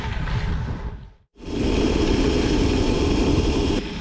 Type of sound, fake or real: real